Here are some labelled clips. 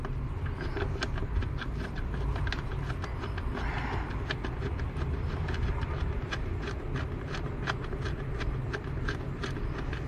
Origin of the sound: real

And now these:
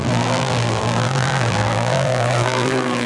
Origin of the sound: fake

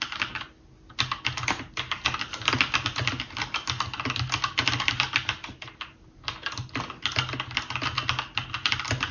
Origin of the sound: real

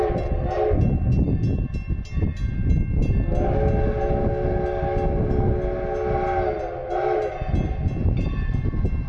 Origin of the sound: real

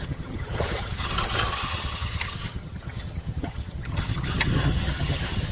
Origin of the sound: fake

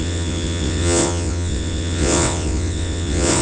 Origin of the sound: fake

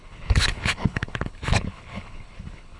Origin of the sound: fake